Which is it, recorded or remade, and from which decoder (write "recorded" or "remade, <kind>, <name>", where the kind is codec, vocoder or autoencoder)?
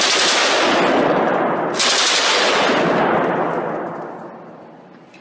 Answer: recorded